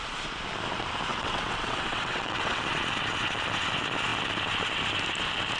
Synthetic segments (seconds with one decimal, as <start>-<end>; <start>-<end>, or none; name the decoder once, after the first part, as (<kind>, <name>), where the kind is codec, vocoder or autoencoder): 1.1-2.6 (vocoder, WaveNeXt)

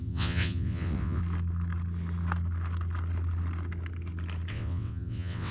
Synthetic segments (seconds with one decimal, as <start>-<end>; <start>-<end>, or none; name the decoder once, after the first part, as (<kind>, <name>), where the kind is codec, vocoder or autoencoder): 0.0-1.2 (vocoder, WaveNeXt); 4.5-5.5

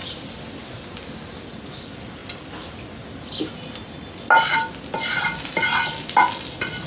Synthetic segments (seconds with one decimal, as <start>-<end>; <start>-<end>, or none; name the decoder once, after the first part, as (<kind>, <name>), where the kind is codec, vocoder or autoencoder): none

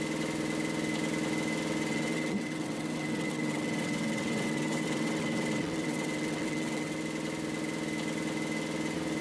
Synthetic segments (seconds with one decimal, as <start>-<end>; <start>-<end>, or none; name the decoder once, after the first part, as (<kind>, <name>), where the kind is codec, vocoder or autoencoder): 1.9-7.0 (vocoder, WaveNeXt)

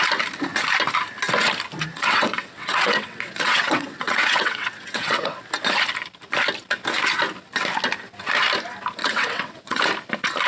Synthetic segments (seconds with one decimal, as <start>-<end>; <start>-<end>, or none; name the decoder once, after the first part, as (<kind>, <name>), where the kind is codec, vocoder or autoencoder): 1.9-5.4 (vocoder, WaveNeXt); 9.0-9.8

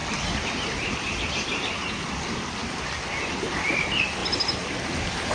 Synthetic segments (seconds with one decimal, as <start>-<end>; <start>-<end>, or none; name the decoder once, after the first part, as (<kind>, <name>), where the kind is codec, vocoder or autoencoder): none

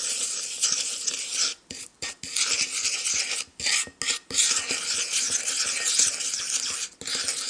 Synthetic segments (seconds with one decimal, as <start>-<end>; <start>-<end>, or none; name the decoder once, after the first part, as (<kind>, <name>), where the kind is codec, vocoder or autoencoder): none

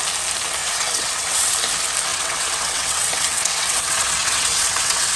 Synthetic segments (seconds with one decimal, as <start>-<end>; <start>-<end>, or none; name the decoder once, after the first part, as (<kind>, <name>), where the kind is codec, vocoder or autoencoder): 0.6-1.5 (vocoder, WaveNeXt); 2.1-5.2